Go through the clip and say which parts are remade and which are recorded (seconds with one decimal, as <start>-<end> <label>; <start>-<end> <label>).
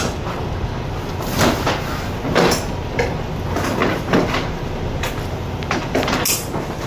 0.0-6.9 recorded